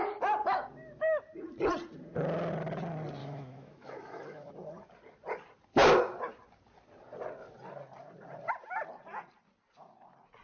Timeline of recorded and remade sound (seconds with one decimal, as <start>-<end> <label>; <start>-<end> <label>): 0.0-3.2 recorded; 3.2-4.5 remade; 4.5-10.4 recorded